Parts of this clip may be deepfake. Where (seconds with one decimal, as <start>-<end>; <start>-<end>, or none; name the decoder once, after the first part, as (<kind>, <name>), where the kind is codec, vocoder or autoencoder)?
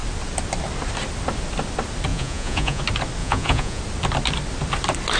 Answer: 2.1-2.8 (vocoder, Vocos); 3.2-3.8